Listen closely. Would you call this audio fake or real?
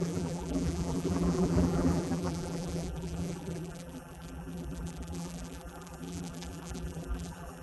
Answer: fake